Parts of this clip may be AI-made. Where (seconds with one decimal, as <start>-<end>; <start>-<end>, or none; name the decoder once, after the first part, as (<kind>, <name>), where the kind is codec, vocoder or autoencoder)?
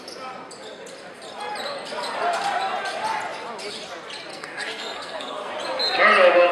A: 4.3-5.5 (codec, SNAC)